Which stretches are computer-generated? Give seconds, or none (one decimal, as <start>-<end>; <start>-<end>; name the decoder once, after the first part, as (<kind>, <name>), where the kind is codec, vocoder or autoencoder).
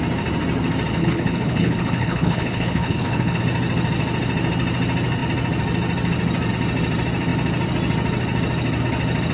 1.0-3.4 (codec, HILCodec)